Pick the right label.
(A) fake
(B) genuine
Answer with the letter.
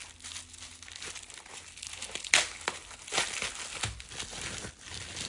B